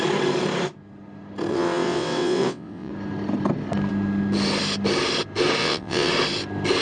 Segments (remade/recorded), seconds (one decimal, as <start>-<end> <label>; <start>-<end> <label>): 0.0-1.5 recorded; 1.5-2.9 remade; 2.9-5.6 recorded; 5.6-6.1 remade; 6.1-6.8 recorded